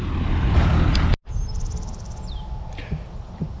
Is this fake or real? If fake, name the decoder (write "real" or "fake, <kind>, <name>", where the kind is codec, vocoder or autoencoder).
real